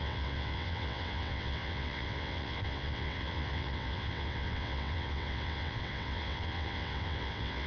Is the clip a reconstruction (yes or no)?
yes